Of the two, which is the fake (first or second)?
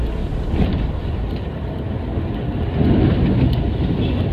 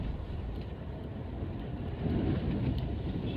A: second